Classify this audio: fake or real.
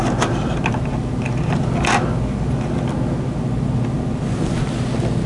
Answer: real